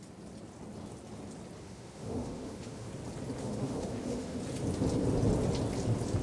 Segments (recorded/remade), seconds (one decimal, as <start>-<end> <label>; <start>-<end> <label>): 0.0-1.6 recorded; 1.6-2.9 remade; 2.9-3.4 recorded; 3.4-4.4 remade; 4.4-6.2 recorded